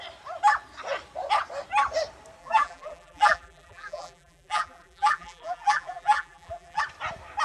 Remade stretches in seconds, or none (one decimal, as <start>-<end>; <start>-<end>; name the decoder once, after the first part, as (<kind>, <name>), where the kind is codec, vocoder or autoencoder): 2.4-6.8 (vocoder, BigVGAN v2)